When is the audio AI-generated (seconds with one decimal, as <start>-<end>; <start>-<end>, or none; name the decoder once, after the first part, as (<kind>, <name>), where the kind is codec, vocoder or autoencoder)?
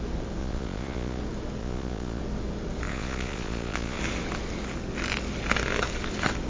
0.4-1.2 (vocoder, Vocos); 1.6-2.2; 2.9-4.0